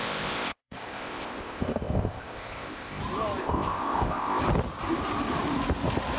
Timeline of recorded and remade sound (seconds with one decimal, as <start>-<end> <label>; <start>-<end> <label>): 0.0-3.0 remade; 3.0-3.4 recorded; 3.4-4.4 remade; 4.4-6.2 recorded